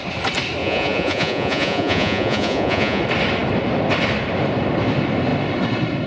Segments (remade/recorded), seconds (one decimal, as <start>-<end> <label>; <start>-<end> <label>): 0.0-0.6 recorded; 0.6-3.0 remade; 3.0-6.1 recorded